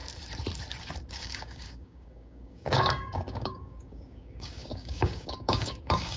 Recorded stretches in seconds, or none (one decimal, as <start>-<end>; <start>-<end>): 0.0-1.1